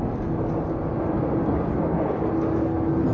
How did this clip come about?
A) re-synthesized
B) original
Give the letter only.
B